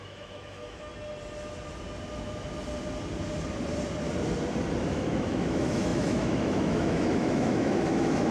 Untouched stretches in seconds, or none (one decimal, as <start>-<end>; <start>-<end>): 0.9-4.8